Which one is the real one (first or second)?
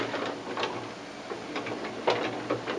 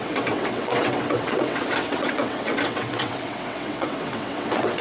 first